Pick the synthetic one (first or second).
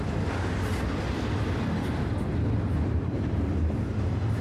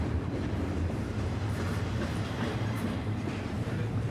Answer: second